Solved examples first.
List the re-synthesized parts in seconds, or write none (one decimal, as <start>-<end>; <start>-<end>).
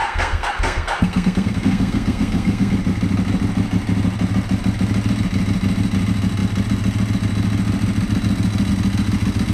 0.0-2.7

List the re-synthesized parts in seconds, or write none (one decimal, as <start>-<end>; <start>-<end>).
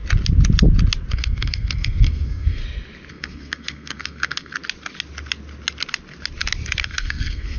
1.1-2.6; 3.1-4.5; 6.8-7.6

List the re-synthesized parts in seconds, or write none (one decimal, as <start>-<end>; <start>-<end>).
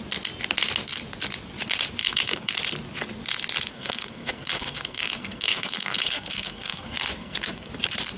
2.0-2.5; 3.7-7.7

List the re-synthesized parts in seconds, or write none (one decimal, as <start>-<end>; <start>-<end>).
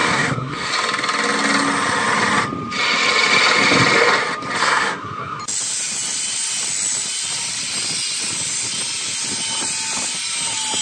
0.0-0.7; 4.6-5.4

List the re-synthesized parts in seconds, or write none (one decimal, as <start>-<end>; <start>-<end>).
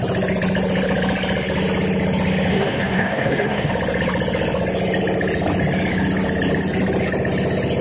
2.5-3.7